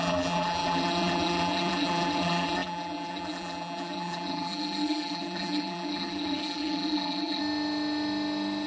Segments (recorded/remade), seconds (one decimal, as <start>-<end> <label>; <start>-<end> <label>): 0.0-7.4 remade; 7.4-8.7 recorded